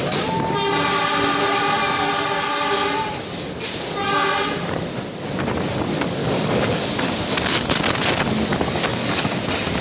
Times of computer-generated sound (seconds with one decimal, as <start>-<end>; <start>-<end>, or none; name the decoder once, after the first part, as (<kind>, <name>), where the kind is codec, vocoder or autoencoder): 6.2-6.8 (codec, DAC); 8.5-9.3